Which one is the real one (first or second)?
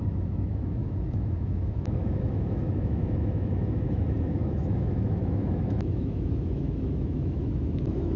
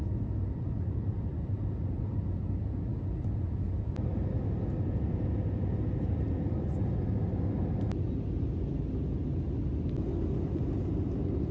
second